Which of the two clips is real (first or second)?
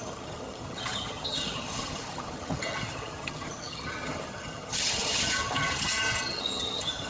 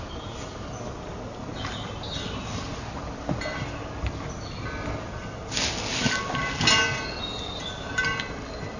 second